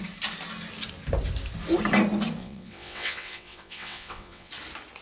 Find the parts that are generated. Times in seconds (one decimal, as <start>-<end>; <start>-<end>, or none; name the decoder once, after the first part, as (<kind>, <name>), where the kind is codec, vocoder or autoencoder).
2.4-4.5 (vocoder, WaveNeXt)